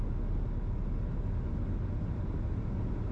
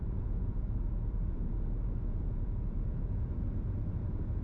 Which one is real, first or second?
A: first